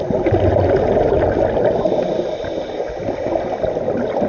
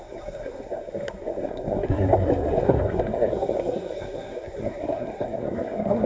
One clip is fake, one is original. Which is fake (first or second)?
second